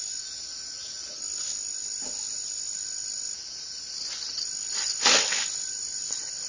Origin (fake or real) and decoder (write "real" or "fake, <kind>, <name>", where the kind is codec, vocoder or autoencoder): real